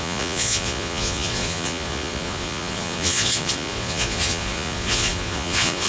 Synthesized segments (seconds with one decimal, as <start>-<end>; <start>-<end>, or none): 0.0-5.9